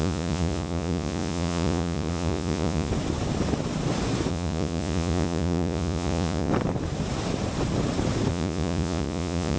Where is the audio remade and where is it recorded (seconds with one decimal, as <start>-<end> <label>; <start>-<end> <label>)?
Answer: 0.0-2.9 remade; 2.9-4.3 recorded; 4.3-6.5 remade; 6.5-8.3 recorded; 8.3-9.6 remade